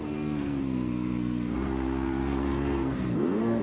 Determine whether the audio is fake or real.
fake